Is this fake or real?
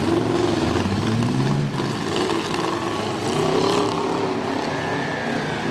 real